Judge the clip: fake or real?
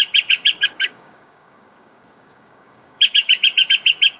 fake